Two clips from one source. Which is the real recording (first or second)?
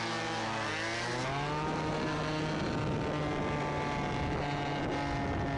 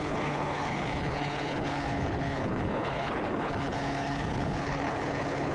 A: first